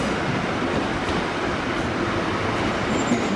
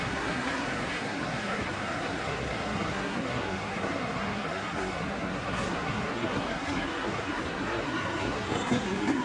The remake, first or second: second